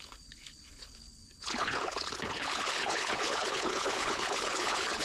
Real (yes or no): no